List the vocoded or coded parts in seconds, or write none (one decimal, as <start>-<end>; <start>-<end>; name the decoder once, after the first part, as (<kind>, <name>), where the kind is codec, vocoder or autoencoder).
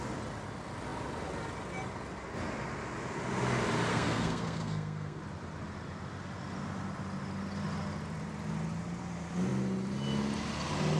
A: 3.9-5.2 (codec, SNAC)